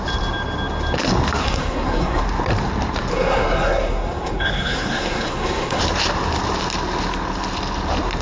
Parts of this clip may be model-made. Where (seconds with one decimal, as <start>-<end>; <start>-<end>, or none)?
1.4-2.2; 3.1-5.8

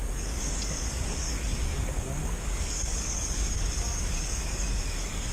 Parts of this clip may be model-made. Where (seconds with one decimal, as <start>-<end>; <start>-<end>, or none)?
0.0-5.3